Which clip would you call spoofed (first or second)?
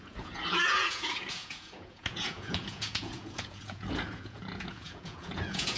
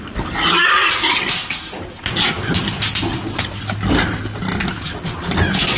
first